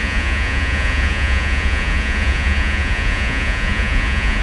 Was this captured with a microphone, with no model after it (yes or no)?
no